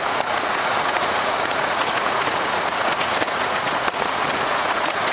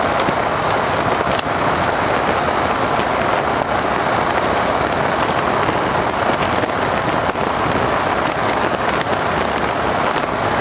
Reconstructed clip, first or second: first